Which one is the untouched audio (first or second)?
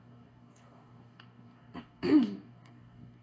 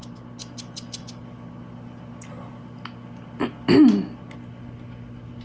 second